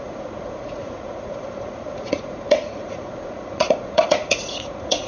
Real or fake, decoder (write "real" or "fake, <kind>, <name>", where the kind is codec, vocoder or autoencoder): fake, vocoder, Vocos